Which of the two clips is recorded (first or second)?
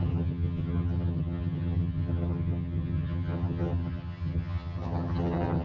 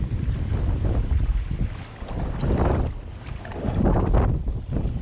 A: second